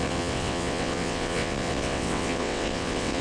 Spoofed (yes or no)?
yes